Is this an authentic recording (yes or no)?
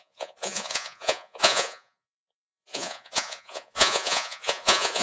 no